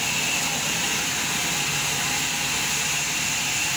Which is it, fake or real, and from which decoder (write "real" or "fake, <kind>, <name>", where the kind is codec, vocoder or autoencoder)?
real